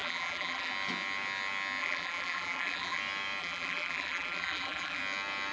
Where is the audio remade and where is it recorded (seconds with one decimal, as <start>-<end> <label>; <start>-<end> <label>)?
0.0-0.7 remade; 0.7-1.8 recorded; 1.8-3.0 remade; 3.0-3.4 recorded; 3.4-5.0 remade; 5.0-5.5 recorded